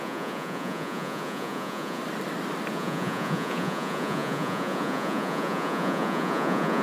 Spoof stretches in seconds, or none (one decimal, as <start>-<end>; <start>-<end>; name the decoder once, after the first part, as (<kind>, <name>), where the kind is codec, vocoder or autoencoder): 0.0-2.0 (vocoder, Vocos); 2.7-6.8